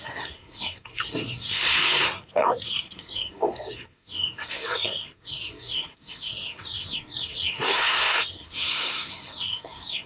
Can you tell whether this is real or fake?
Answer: fake